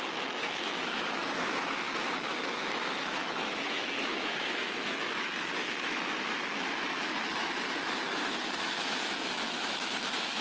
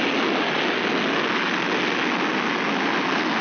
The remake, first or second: first